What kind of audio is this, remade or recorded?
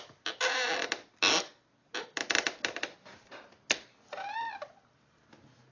recorded